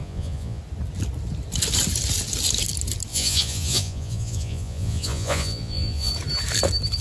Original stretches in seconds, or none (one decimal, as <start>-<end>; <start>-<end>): 0.6-3.1; 6.1-7.0